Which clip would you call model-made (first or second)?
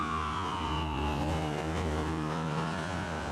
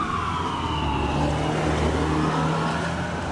first